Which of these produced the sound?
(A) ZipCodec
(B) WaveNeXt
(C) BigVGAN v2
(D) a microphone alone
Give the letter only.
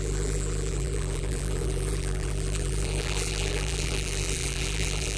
C